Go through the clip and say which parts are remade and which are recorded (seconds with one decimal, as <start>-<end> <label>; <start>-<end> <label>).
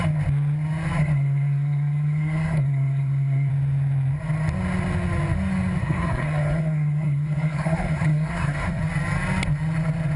0.0-1.0 recorded; 1.0-3.5 remade; 3.5-5.8 recorded; 5.8-8.8 remade; 8.8-10.2 recorded